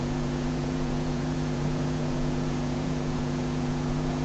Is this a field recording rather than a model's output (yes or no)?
no